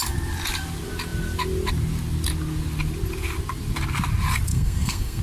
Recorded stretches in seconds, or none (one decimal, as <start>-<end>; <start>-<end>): 0.0-4.5